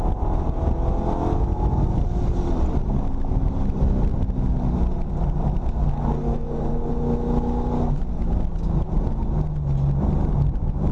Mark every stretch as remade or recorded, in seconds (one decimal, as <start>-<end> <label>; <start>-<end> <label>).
0.0-6.2 recorded; 6.2-6.9 remade; 6.9-10.9 recorded